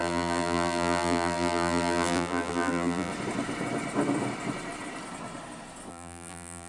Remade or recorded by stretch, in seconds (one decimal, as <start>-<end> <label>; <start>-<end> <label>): 0.0-3.1 remade; 3.1-5.9 recorded; 5.9-6.7 remade